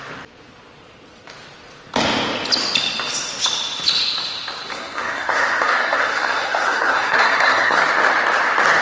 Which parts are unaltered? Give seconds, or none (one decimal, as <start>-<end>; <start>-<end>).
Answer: 0.0-4.7; 7.8-8.8